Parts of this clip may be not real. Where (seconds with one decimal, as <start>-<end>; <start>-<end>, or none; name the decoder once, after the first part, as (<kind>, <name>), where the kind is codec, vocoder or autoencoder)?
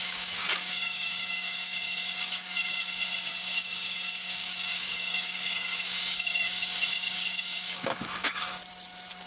0.0-8.5 (codec, DAC)